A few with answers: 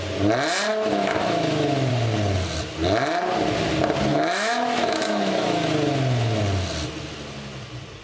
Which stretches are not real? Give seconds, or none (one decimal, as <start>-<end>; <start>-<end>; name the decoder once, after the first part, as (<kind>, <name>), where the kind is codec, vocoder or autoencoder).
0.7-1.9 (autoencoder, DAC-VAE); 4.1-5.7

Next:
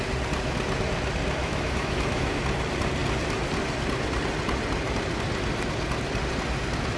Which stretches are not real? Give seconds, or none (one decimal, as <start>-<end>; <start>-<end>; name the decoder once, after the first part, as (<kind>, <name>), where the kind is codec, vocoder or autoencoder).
1.4-2.4 (autoencoder, DAC-VAE)

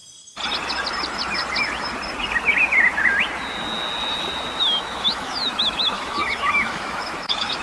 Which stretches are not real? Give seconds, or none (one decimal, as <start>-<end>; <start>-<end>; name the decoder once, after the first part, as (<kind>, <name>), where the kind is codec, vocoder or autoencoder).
4.6-7.6 (autoencoder, DAC-VAE)

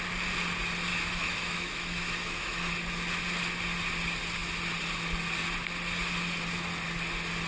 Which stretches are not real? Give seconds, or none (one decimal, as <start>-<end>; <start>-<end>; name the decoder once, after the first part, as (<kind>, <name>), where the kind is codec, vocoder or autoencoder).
0.9-2.7 (autoencoder, DAC-VAE)